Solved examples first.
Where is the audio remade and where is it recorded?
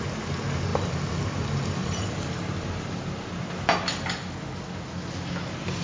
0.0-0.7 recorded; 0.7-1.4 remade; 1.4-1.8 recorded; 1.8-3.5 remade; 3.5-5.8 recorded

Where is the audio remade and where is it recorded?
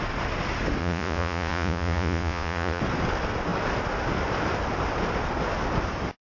0.0-0.8 recorded; 0.8-2.8 remade; 2.8-6.3 recorded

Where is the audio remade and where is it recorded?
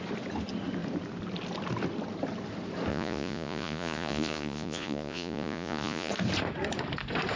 0.0-2.9 recorded; 2.9-6.1 remade; 6.1-7.4 recorded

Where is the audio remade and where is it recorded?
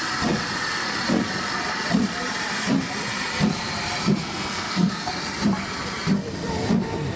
0.0-4.2 recorded; 4.2-5.1 remade; 5.1-7.2 recorded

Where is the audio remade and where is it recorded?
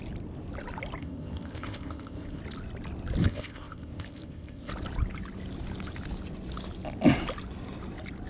0.0-1.0 recorded; 1.0-2.4 remade; 2.4-3.2 recorded; 3.2-4.7 remade; 4.7-8.3 recorded